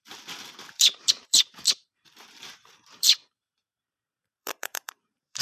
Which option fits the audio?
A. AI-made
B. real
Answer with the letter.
A